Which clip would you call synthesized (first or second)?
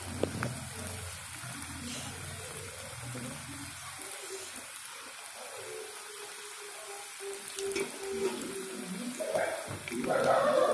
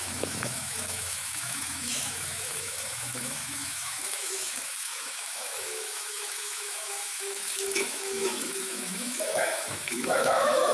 second